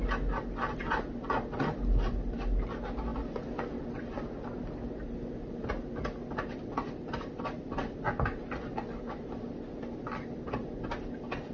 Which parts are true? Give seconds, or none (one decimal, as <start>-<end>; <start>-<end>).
0.0-11.5